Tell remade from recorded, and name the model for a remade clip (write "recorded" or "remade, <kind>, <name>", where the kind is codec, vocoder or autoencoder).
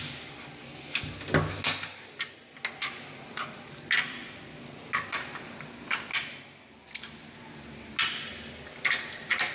recorded